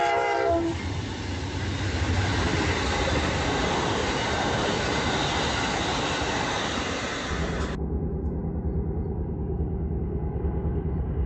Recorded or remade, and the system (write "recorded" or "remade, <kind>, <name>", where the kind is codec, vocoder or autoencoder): recorded